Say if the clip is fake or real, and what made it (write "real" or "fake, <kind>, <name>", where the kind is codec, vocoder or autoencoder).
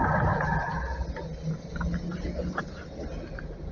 real